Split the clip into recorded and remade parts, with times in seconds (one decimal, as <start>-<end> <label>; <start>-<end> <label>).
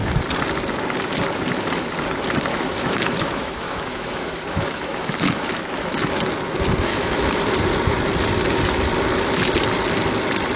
0.0-2.5 recorded; 2.5-5.5 remade; 5.5-6.9 recorded; 6.9-7.5 remade; 7.5-10.6 recorded